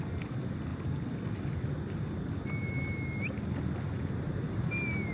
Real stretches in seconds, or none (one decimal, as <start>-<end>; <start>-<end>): 0.0-5.1